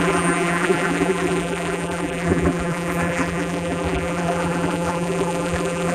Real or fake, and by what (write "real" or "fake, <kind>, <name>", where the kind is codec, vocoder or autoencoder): fake, vocoder, BigVGAN v2